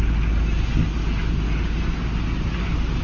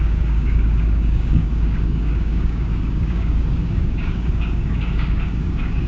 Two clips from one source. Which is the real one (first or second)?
first